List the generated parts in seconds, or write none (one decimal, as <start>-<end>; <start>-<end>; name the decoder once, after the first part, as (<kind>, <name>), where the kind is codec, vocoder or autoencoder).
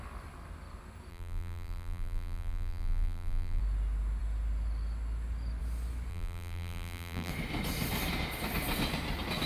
1.1-3.6 (vocoder, BigVGAN v2); 6.1-7.3